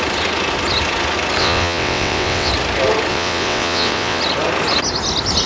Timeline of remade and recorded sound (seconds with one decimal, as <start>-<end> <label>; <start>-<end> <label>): 0.0-1.4 recorded; 1.4-2.5 remade; 2.5-3.1 recorded; 3.1-4.2 remade; 4.2-5.5 recorded